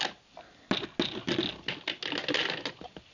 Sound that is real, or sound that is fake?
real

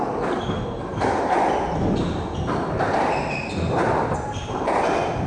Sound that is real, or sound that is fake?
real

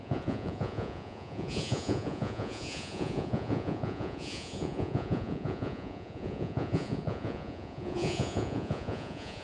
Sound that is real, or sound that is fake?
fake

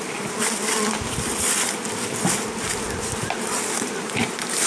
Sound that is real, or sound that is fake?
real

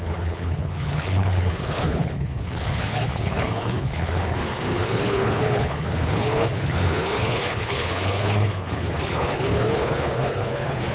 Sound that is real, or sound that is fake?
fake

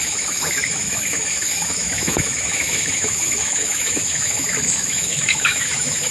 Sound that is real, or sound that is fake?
fake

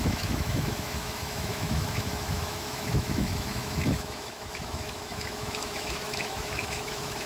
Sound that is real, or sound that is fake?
fake